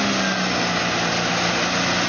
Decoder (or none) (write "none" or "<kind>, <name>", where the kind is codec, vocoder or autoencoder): none